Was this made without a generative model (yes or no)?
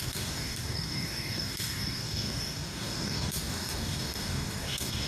no